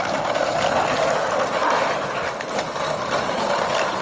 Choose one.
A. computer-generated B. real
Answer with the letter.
B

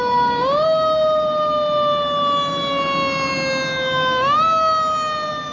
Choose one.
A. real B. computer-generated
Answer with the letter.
A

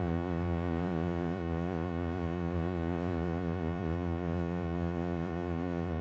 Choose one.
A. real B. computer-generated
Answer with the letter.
B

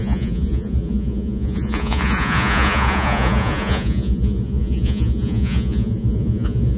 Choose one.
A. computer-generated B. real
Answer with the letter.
A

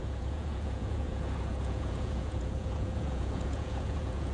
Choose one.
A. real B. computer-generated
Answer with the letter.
B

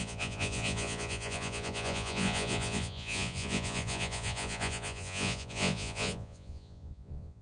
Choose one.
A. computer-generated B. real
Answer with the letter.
A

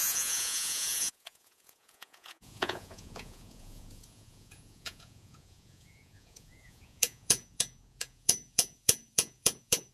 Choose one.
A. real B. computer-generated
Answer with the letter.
B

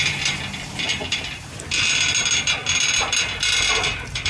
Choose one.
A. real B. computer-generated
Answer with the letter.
A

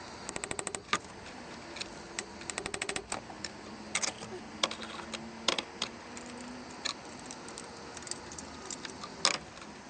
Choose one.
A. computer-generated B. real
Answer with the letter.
B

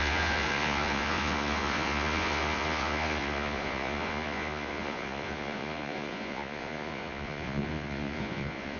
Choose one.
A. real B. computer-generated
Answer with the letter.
B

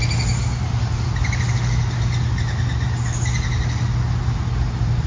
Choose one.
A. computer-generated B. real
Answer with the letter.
B